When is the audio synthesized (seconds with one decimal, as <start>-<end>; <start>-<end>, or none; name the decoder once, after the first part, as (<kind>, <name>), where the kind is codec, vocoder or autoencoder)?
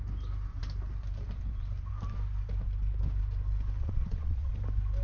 3.8-4.5 (vocoder, Vocos)